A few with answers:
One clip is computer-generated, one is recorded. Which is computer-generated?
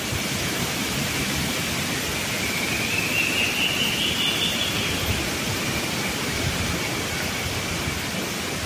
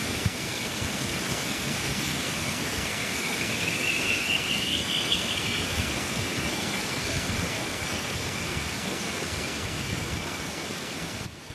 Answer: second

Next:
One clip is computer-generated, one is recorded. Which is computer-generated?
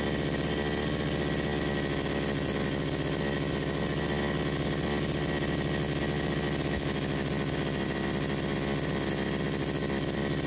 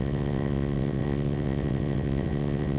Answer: second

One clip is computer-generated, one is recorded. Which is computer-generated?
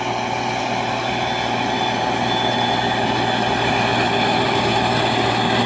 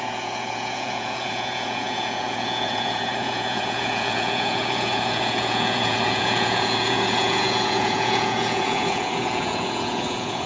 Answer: second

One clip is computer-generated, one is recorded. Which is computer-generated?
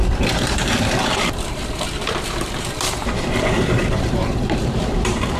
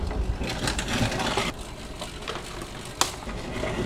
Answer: first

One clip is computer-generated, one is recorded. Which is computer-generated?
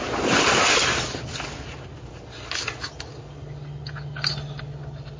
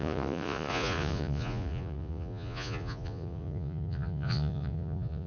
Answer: second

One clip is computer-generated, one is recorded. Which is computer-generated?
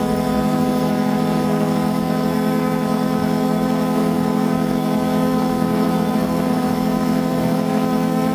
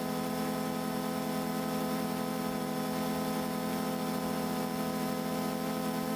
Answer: first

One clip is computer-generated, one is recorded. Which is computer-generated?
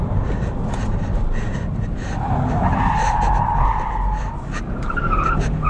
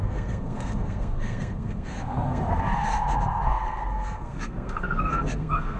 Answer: second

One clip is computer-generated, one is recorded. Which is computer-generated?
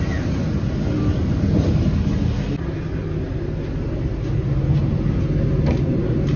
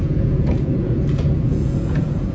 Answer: second